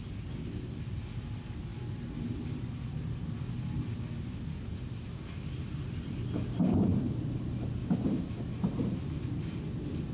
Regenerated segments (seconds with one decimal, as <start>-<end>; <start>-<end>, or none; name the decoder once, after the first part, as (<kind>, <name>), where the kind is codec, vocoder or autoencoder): none